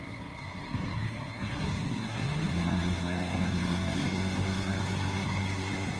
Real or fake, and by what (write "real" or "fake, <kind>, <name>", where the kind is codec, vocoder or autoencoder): fake, codec, SNAC